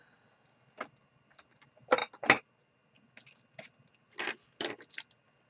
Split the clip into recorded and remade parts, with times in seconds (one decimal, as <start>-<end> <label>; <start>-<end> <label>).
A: 0.0-5.5 recorded